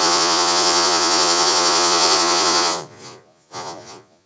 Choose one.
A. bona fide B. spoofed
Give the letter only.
B